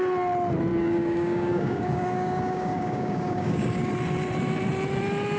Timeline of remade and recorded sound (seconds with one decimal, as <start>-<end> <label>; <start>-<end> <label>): 0.0-0.7 recorded; 0.7-3.9 remade; 3.9-5.4 recorded